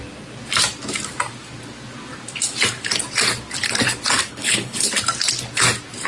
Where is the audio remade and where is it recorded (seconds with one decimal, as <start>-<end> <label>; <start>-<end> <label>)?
0.0-4.3 recorded; 4.3-4.9 remade; 4.9-6.1 recorded